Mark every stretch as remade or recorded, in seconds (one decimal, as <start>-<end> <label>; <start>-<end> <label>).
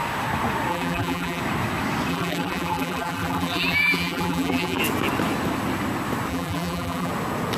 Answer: 0.0-0.7 recorded; 0.7-1.4 remade; 1.4-2.1 recorded; 2.1-4.8 remade; 4.8-6.3 recorded; 6.3-7.1 remade; 7.1-7.6 recorded